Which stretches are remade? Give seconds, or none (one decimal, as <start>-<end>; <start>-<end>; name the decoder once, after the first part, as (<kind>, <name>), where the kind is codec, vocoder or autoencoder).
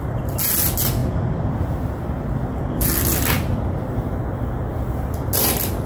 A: none